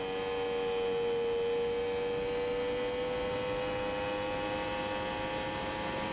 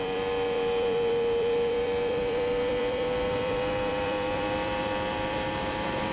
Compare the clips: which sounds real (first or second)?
first